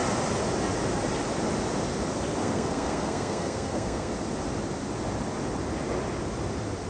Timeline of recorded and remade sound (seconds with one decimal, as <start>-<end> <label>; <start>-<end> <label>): 0.0-2.4 recorded; 2.4-4.1 remade; 4.1-6.9 recorded